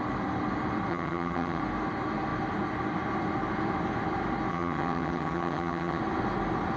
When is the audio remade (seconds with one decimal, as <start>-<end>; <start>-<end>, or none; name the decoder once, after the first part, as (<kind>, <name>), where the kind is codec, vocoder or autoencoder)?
0.9-1.6 (vocoder, HiFi-GAN); 4.5-6.0